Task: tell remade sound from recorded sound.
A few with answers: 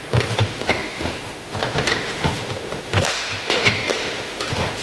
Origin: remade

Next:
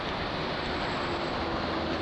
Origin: recorded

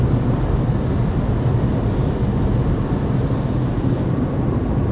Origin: recorded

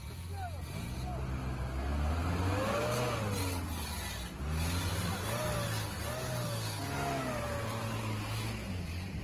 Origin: recorded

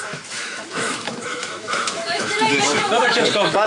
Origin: remade